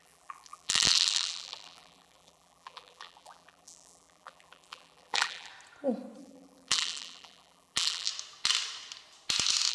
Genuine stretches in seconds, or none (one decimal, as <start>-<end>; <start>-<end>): 5.5-6.2; 8.1-9.7

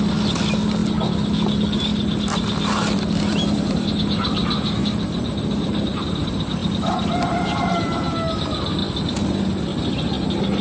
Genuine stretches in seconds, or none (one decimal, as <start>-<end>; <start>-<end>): 0.0-10.6

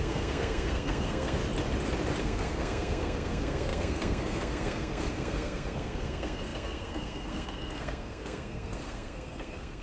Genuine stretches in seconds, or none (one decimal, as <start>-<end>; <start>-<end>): 1.4-2.2

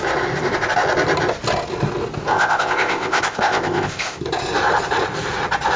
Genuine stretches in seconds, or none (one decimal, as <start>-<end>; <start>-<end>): 0.0-2.3; 4.2-5.8

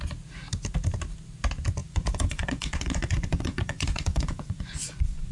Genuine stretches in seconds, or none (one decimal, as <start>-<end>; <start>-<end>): 0.0-1.8

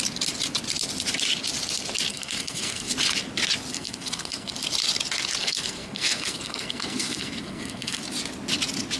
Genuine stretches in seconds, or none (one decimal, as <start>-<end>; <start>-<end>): 0.0-2.1; 2.9-3.7; 4.5-5.4; 8.0-9.0

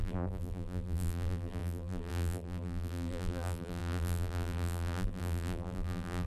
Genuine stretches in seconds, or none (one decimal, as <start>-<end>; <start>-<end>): none

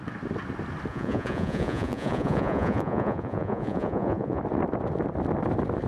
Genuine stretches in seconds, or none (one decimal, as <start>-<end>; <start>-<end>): 0.0-0.9; 4.4-5.9